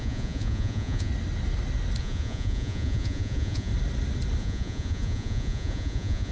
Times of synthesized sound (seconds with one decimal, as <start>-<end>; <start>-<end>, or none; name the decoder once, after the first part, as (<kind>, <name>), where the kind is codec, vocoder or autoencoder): 0.0-1.1 (vocoder, Vocos); 2.0-3.7; 4.4-6.3